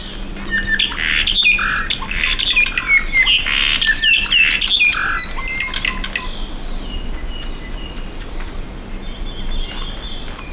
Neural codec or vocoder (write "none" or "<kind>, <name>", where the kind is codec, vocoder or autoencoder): none